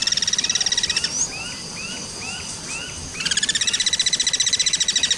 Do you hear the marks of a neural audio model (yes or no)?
no